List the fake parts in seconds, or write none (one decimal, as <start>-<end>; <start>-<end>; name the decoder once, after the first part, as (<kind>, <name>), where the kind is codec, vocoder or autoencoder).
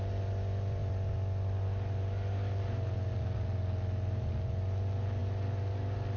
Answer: none